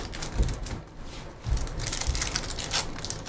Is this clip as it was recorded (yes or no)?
yes